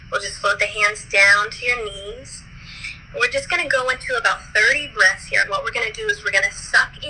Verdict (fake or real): fake